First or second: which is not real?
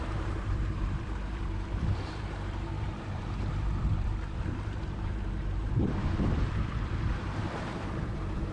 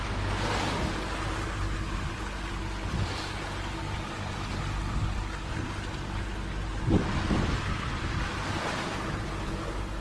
first